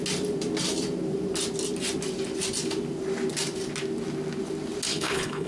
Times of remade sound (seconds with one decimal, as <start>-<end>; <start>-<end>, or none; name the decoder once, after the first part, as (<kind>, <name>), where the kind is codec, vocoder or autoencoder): 4.9-5.5 (codec, HILCodec)